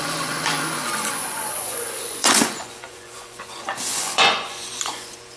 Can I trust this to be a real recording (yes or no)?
no